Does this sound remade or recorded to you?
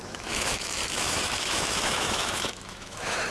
remade